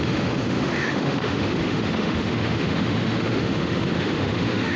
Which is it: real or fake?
fake